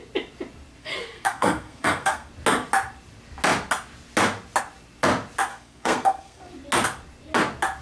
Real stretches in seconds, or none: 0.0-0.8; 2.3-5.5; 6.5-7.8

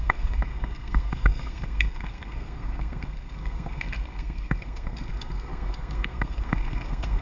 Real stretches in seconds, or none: none

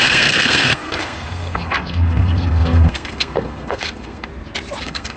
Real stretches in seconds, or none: 4.3-4.8

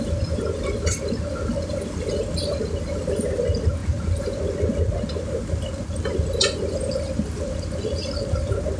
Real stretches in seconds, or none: 0.0-8.8

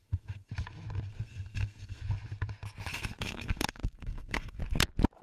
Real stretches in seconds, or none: 0.5-1.1; 2.0-2.9; 4.6-5.2